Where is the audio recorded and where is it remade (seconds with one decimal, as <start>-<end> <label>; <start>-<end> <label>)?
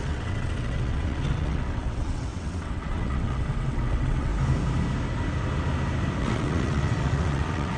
0.0-4.3 remade; 4.3-6.2 recorded; 6.2-7.8 remade